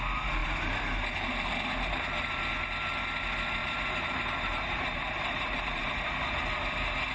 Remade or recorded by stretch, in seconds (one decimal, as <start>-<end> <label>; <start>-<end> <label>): 0.0-3.6 recorded; 3.6-6.1 remade; 6.1-7.1 recorded